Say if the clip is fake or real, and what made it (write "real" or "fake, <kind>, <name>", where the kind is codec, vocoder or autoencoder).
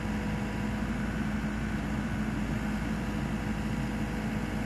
real